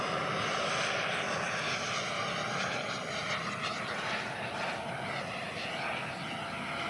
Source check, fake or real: real